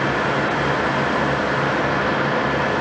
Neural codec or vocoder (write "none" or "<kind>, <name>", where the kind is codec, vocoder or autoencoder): none